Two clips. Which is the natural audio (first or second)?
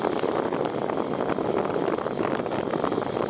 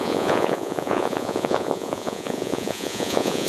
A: first